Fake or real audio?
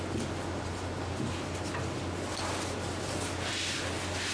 real